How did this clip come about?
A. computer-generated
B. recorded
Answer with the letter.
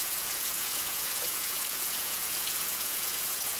A